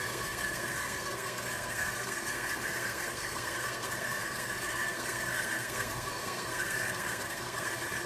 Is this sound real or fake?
fake